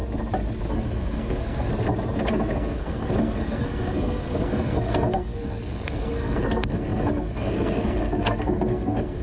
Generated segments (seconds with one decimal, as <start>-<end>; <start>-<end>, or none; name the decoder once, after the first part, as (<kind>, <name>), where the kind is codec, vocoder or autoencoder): 0.7-1.7 (codec, SNAC); 2.3-9.2